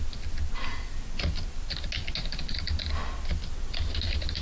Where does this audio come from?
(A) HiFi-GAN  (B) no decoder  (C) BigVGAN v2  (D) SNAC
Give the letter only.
B